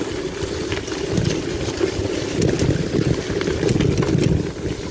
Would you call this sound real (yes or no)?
yes